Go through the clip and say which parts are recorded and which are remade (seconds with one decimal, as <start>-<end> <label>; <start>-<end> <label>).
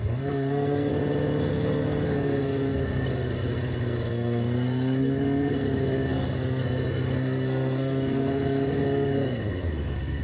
0.0-0.9 remade; 0.9-1.5 recorded; 1.5-10.2 remade